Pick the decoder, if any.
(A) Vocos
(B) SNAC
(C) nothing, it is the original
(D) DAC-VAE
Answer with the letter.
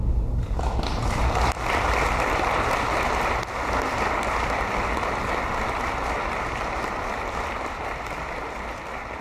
C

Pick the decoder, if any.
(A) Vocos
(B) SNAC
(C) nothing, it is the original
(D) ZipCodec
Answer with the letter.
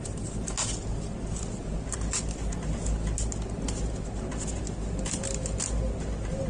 C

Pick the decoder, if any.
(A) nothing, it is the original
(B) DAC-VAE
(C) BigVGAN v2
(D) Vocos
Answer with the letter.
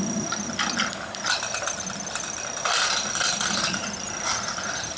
A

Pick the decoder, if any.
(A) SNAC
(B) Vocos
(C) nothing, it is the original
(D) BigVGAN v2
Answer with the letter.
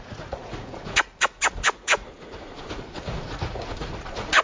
B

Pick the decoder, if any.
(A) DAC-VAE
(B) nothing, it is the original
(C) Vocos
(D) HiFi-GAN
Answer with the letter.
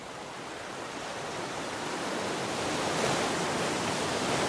B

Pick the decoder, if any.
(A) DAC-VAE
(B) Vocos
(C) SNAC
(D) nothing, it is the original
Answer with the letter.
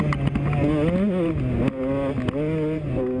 D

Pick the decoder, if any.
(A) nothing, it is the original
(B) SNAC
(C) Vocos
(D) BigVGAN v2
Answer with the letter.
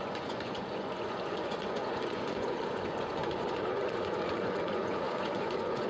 C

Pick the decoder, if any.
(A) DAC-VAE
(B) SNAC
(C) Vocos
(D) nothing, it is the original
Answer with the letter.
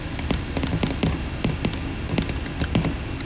D